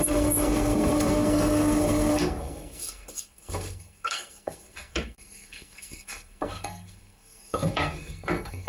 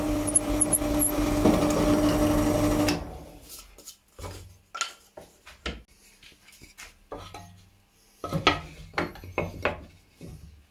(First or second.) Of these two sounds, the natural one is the second